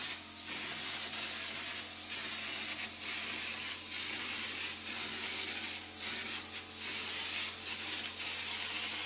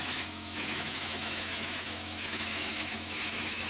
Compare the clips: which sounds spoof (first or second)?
second